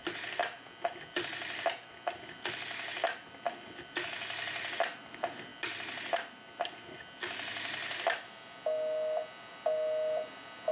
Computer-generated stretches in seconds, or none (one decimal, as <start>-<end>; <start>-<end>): none